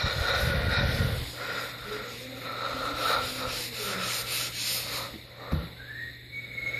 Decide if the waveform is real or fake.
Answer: real